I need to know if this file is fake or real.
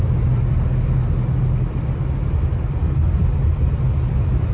real